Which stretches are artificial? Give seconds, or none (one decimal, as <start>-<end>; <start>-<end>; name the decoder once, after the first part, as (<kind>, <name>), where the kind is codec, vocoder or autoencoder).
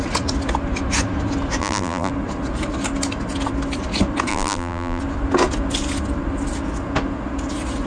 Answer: 1.6-2.1 (vocoder, BigVGAN v2); 4.3-5.0